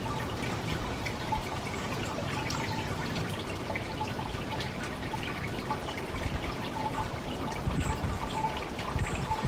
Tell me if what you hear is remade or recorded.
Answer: remade